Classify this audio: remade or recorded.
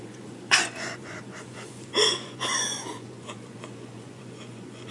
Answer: remade